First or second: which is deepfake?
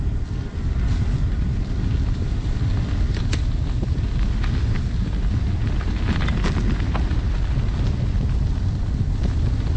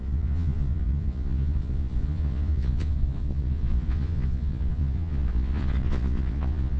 second